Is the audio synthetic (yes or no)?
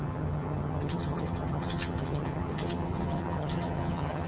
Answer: yes